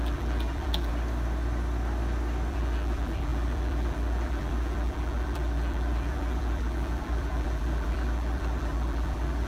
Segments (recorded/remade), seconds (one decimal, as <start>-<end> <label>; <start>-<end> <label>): 0.0-0.9 remade; 0.9-2.5 recorded; 2.5-9.5 remade